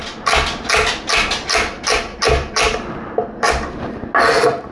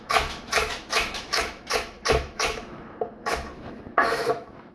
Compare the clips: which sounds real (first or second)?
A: first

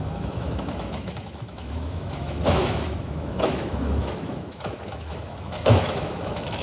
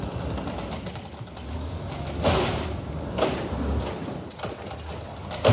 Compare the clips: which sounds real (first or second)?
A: second